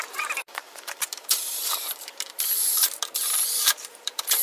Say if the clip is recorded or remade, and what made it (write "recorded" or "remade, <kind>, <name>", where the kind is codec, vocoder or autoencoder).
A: remade, vocoder, BigVGAN v2